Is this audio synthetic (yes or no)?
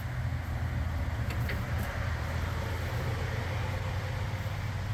no